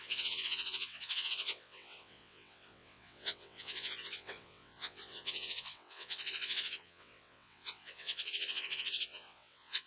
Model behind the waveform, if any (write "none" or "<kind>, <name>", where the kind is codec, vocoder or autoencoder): vocoder, WaveNeXt